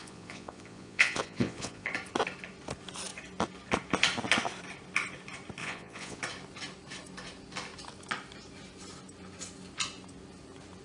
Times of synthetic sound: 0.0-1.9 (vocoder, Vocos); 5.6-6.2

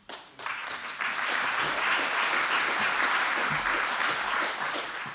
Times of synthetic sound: 0.0-0.6 (vocoder, BigVGAN v2); 2.8-3.4; 4.1-5.1

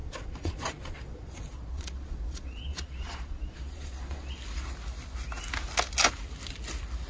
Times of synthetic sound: 0.0-4.3 (vocoder, Vocos)

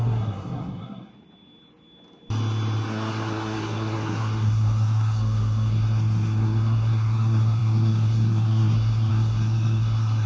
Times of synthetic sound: 0.0-1.1 (codec, SNAC); 2.9-10.3

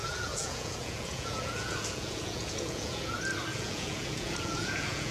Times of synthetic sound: 0.0-3.1 (vocoder, Vocos); 3.5-5.1